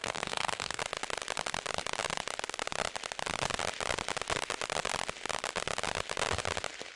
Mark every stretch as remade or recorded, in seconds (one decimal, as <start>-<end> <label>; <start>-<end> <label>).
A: 0.0-0.8 remade; 0.8-7.0 recorded